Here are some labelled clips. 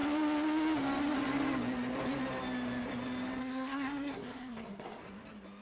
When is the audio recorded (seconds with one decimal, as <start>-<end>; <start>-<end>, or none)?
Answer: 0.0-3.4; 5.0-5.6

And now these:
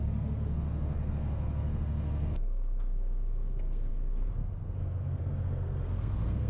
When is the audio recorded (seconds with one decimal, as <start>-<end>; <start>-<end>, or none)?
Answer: none

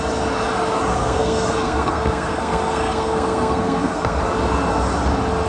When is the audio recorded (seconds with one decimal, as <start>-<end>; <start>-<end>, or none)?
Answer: 0.0-0.9; 4.2-5.5